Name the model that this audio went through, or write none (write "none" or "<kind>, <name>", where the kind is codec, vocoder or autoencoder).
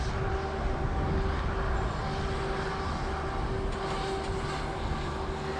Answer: none